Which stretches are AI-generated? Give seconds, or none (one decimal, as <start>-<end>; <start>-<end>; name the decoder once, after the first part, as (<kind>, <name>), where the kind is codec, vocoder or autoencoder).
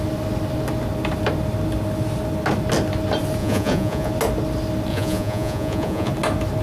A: 3.4-4.1 (vocoder, Vocos); 4.9-6.1